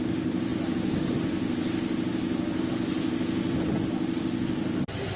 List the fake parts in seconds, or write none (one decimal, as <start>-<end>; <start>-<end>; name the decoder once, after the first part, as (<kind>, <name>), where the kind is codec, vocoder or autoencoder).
none